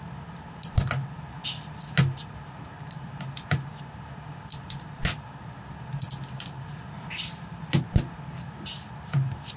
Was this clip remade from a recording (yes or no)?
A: no